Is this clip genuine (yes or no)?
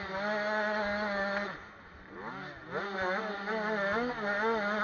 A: yes